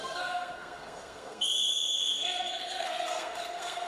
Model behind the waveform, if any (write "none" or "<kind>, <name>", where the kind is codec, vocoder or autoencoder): codec, SNAC